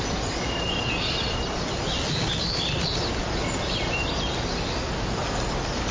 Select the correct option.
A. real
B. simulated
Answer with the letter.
A